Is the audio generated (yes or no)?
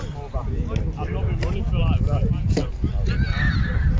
no